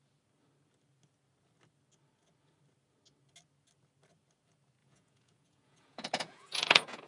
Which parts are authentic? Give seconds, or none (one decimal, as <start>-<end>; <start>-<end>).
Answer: 0.0-4.8